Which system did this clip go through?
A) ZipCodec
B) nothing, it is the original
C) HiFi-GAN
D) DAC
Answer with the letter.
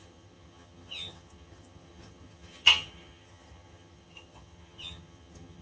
C